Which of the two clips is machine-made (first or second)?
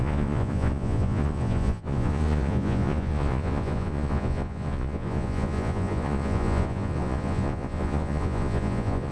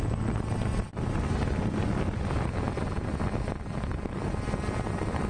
first